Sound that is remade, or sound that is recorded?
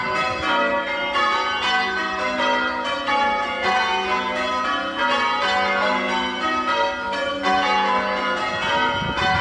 recorded